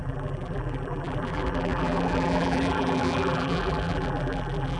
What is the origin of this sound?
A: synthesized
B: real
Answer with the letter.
A